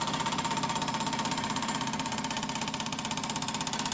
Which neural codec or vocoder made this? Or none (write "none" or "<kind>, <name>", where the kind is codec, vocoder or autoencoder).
none